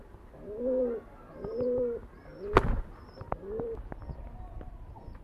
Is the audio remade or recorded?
recorded